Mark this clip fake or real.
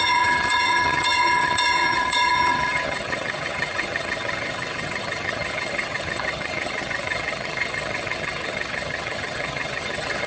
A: fake